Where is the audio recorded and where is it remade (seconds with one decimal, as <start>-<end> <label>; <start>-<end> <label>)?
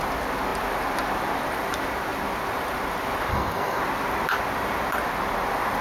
0.0-3.3 recorded; 3.3-3.8 remade; 3.8-5.8 recorded